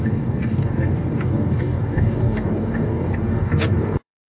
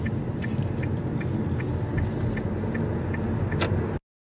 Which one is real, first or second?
second